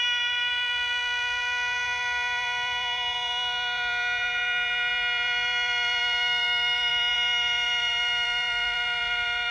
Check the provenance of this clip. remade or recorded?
remade